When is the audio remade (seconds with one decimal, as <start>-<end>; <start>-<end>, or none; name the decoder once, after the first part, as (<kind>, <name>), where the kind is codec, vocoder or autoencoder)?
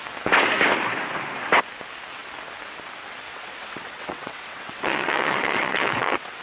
3.3-6.4 (vocoder, WaveNeXt)